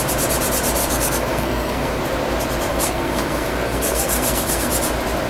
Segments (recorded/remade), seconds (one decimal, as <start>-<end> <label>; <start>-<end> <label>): 0.0-0.8 recorded; 0.8-2.0 remade; 2.0-2.7 recorded; 2.7-4.7 remade; 4.7-5.3 recorded